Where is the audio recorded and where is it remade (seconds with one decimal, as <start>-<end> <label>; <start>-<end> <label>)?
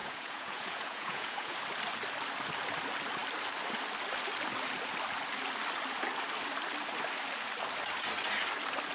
0.0-1.5 remade; 1.5-8.9 recorded